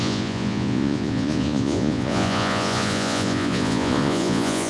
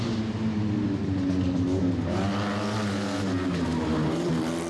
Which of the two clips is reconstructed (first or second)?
first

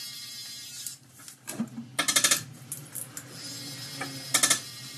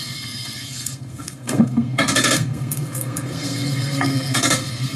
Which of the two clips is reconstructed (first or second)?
second